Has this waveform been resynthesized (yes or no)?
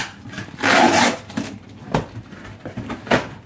no